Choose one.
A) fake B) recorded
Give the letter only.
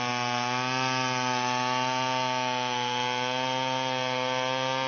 B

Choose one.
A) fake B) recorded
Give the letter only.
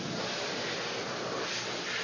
B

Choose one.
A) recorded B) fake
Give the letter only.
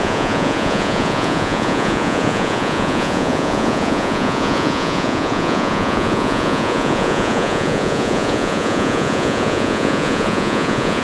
B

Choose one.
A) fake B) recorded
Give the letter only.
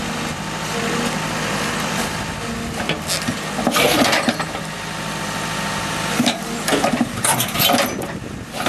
B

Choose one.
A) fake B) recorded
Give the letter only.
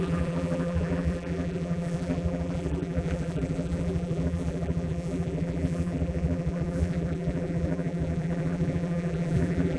A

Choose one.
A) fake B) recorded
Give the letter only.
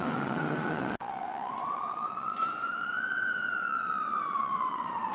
A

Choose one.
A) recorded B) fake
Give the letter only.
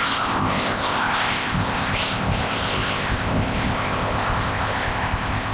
B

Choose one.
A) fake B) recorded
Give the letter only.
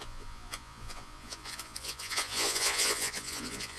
A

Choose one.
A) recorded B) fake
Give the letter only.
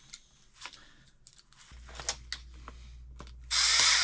A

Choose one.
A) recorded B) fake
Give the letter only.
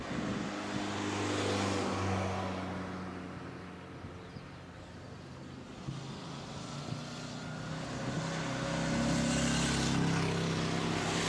A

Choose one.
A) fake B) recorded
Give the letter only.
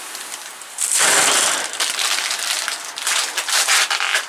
B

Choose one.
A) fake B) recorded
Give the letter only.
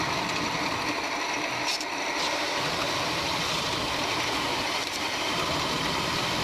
B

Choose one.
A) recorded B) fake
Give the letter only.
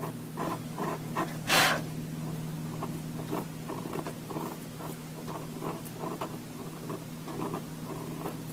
A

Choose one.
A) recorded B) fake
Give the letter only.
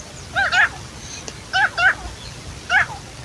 A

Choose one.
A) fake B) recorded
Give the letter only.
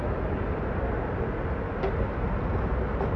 B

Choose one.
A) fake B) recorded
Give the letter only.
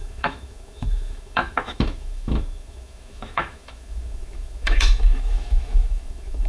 A